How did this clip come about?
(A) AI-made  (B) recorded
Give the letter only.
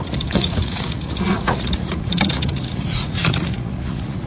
A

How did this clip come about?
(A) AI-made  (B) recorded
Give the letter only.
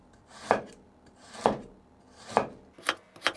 B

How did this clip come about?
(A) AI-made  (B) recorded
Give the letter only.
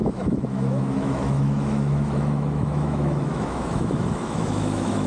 A